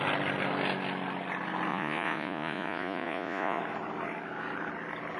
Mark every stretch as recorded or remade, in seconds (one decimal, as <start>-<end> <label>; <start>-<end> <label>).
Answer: 0.0-1.7 recorded; 1.7-3.6 remade; 3.6-5.2 recorded